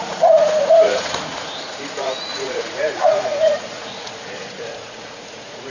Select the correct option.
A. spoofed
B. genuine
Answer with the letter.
A